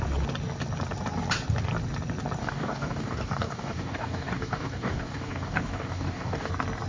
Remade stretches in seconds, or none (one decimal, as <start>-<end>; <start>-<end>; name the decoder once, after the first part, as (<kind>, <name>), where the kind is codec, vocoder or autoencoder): 2.4-6.5 (codec, DAC)